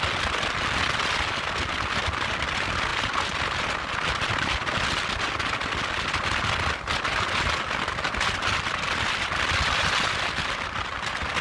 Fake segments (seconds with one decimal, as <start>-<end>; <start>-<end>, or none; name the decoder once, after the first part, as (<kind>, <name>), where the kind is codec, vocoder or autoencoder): none